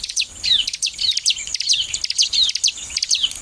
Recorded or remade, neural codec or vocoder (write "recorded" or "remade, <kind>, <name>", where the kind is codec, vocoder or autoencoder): recorded